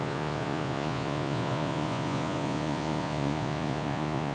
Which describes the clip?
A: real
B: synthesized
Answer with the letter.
B